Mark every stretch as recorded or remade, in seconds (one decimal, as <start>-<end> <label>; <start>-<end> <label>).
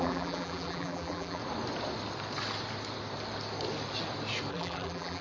0.0-1.4 remade; 1.4-4.5 recorded; 4.5-5.2 remade